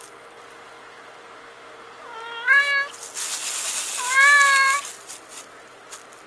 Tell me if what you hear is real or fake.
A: real